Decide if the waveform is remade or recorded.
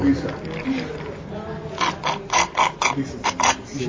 recorded